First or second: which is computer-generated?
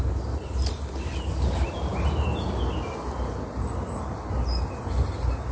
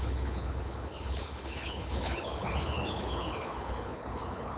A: second